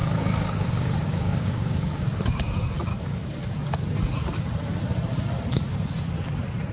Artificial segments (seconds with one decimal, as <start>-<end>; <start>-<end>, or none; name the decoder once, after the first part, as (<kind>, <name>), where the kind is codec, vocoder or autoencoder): 0.0-2.5 (codec, DAC); 2.9-3.5

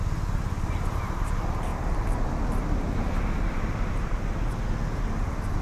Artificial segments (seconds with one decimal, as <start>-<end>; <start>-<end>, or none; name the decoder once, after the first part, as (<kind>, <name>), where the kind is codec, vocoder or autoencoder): none

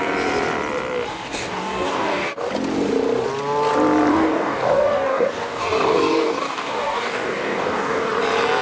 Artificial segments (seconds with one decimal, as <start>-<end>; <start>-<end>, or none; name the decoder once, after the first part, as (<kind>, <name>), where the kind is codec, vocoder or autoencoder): 1.1-2.5 (codec, DAC); 4.1-8.1

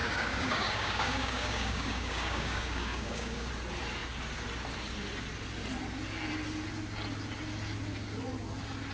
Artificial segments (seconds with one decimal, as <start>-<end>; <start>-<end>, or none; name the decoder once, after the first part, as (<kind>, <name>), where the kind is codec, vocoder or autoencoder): 0.0-3.5 (codec, DAC)

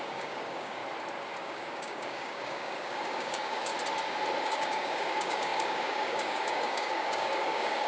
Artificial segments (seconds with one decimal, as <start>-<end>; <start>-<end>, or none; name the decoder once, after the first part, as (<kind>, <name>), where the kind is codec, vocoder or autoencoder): 0.0-0.8 (codec, DAC); 1.4-3.7; 4.4-7.9

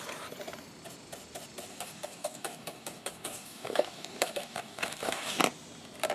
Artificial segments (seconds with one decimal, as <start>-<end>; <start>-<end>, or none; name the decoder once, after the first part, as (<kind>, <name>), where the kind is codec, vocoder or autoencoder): 1.7-5.4 (codec, DAC)

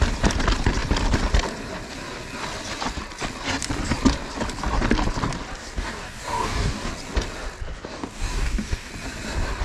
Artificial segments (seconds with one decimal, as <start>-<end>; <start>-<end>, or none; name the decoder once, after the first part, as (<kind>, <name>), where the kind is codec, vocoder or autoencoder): 5.6-6.9 (codec, DAC); 7.9-8.9

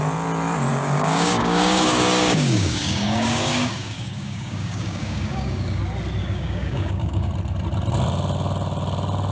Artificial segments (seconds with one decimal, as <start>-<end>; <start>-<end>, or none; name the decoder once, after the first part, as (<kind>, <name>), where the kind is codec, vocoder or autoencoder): 0.7-5.8 (codec, DAC); 6.2-7.3